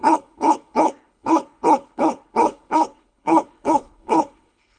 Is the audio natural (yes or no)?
no